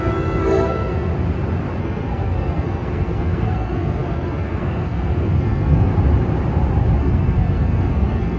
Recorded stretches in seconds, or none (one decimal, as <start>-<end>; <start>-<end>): 1.1-1.8; 5.9-7.0